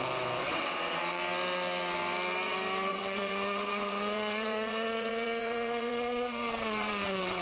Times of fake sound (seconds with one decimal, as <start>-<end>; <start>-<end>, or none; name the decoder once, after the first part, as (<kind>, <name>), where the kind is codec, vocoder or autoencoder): 0.4-1.2 (vocoder, WaveNeXt); 2.9-7.4